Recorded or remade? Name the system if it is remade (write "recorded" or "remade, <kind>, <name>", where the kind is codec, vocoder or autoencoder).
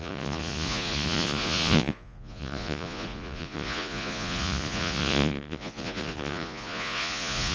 remade, vocoder, Vocos